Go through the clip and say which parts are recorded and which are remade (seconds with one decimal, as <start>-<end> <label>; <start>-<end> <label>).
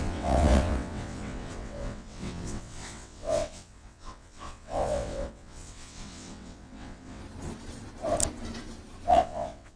0.0-7.2 remade; 7.2-9.1 recorded; 9.1-9.8 remade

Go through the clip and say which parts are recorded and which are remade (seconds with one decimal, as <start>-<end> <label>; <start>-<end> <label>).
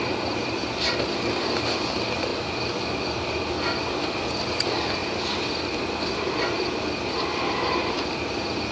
0.0-8.7 recorded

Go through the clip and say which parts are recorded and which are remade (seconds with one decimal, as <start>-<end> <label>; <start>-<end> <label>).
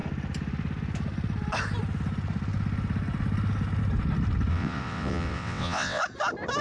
0.0-4.5 recorded; 4.5-6.0 remade; 6.0-6.6 recorded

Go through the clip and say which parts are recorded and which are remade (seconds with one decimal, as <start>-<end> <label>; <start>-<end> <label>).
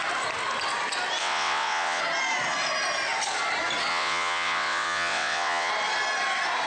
0.0-1.2 recorded; 1.2-2.0 remade; 2.0-3.9 recorded; 3.9-5.7 remade; 5.7-6.7 recorded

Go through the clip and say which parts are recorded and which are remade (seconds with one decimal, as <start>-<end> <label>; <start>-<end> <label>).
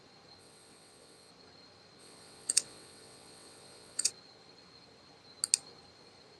0.0-0.4 recorded; 0.4-1.3 remade; 1.3-2.0 recorded; 2.0-4.1 remade; 4.1-6.4 recorded